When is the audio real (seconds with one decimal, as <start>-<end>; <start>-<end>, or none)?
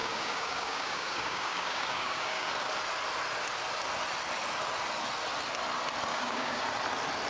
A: 2.5-6.1; 6.6-7.3